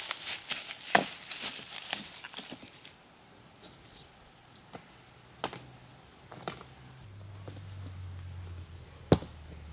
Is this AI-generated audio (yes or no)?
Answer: no